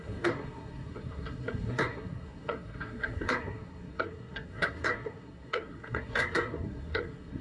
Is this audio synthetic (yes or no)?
yes